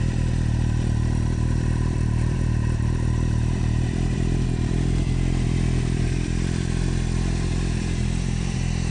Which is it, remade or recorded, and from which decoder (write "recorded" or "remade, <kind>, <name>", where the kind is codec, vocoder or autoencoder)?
remade, vocoder, BigVGAN v2